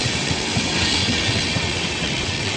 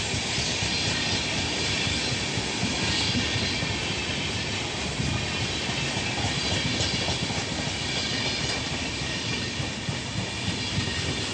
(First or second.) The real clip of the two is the second